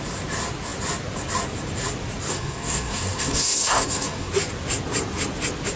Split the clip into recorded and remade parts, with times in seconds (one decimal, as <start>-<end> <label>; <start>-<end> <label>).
0.0-2.3 recorded; 2.3-4.3 remade; 4.3-5.8 recorded